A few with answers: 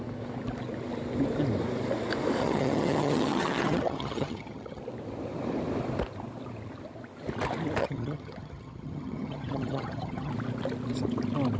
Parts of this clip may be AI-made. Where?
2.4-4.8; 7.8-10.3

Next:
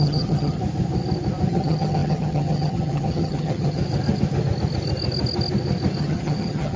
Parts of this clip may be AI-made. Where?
0.0-0.6; 1.5-3.8; 6.0-6.8

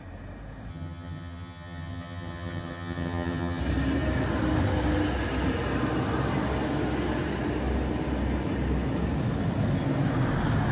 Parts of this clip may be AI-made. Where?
0.7-3.6

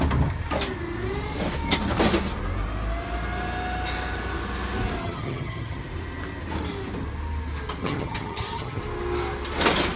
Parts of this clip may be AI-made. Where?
5.0-5.8; 7.8-8.8